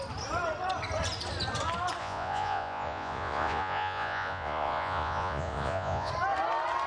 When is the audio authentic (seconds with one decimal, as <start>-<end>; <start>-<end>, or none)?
0.0-2.0; 6.1-6.9